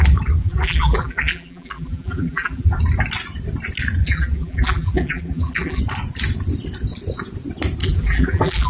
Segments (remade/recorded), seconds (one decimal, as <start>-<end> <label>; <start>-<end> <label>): 0.0-0.4 recorded; 0.4-2.8 remade; 2.8-4.0 recorded; 4.0-5.8 remade; 5.8-7.8 recorded; 7.8-8.7 remade